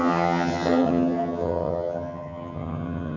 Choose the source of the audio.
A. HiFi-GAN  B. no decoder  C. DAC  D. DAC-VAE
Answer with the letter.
A